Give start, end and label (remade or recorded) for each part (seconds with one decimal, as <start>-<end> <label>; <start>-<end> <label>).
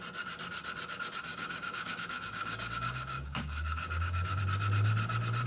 0.0-1.3 recorded; 1.3-4.4 remade; 4.4-5.5 recorded